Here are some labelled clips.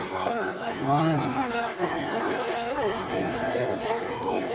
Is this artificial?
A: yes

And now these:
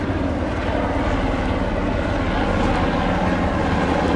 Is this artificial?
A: no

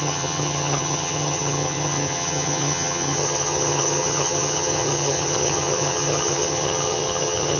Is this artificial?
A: yes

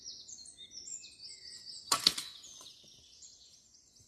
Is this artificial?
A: yes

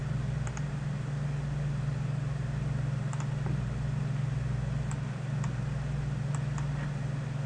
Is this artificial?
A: no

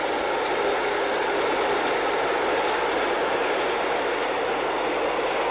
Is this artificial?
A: no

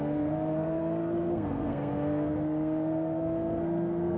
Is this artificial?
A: yes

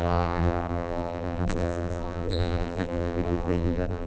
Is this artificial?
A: yes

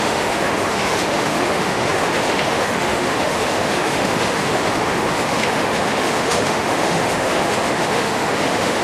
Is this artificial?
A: yes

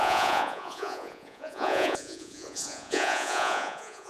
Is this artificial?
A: yes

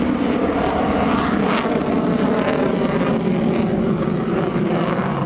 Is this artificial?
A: no